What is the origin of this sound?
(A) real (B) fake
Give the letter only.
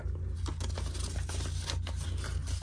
A